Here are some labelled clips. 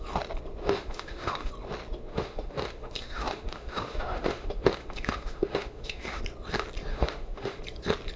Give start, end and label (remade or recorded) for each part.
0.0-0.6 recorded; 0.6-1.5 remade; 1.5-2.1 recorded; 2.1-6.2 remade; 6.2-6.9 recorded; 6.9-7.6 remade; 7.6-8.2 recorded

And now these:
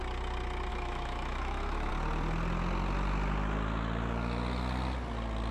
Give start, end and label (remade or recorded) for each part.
0.0-0.7 recorded; 0.7-1.9 remade; 1.9-5.5 recorded

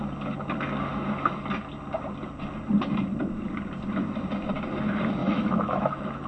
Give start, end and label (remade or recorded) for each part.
0.0-5.2 recorded; 5.2-6.3 remade

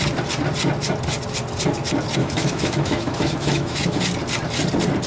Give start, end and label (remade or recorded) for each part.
0.0-2.2 recorded; 2.2-4.0 remade; 4.0-5.1 recorded

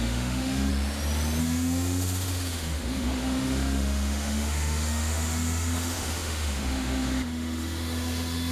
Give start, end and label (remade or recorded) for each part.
0.0-0.7 remade; 0.7-1.4 recorded; 1.4-8.5 remade